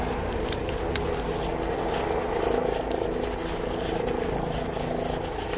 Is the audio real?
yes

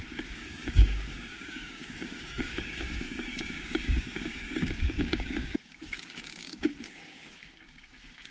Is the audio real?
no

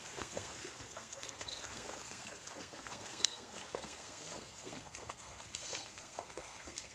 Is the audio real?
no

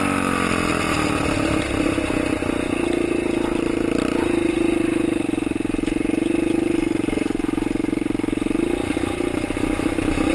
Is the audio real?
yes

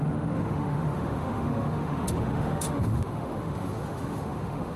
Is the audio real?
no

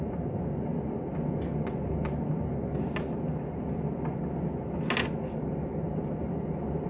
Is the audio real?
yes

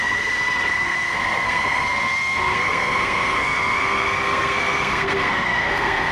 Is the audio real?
no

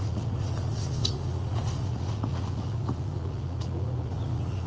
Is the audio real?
no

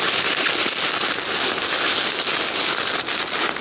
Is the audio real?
yes